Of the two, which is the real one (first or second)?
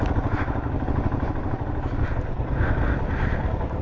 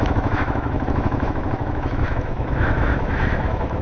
first